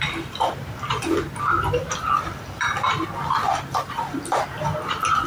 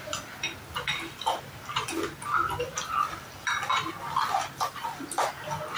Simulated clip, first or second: first